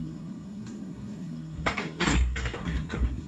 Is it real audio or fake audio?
fake